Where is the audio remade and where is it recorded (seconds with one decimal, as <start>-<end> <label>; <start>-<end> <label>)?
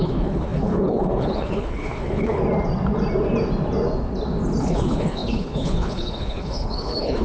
0.0-2.4 remade; 2.4-4.6 recorded; 4.6-7.2 remade